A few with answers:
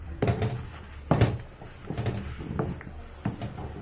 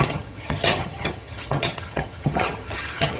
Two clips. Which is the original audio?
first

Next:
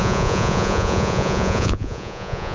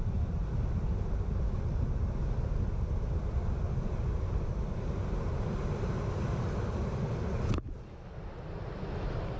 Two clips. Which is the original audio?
second